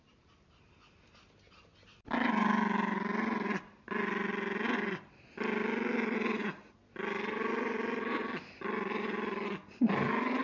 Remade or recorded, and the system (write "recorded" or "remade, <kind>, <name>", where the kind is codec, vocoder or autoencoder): recorded